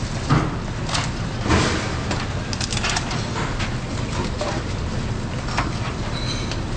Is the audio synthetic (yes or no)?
no